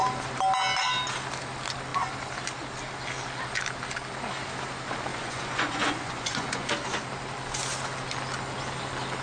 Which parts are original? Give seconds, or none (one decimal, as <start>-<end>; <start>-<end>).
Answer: 0.0-5.1; 6.7-9.2